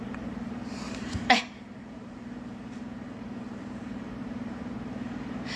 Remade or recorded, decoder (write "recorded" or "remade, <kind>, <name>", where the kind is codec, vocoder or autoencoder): remade, vocoder, BigVGAN v2